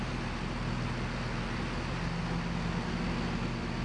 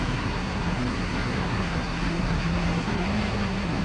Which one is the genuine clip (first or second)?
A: first